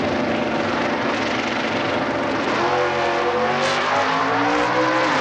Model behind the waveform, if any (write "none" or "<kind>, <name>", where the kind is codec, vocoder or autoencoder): none